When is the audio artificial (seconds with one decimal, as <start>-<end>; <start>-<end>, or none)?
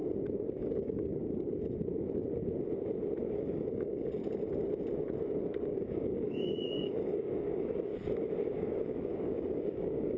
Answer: 0.6-1.5; 3.2-4.2; 5.4-7.9; 8.4-10.2